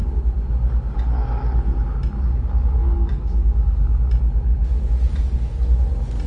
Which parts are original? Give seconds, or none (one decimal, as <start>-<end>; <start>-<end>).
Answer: 0.0-2.8; 3.8-6.3